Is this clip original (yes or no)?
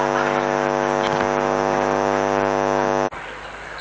yes